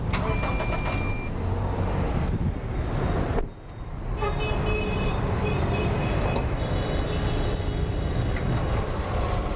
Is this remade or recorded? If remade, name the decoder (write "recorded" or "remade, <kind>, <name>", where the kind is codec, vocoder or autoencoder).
recorded